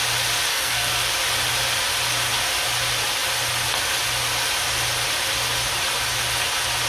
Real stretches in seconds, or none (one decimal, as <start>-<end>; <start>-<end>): 0.0-0.5; 1.1-6.9